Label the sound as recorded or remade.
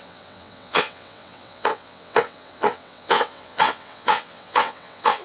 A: remade